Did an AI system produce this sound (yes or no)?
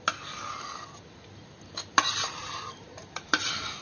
no